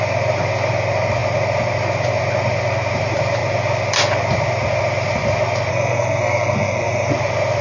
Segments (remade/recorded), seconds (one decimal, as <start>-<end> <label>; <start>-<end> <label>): 0.0-5.7 recorded; 5.7-7.1 remade; 7.1-7.6 recorded

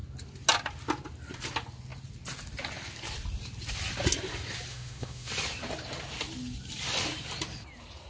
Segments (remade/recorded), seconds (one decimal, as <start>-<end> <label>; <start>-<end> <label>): 0.0-4.7 recorded; 4.7-5.3 remade; 5.3-8.1 recorded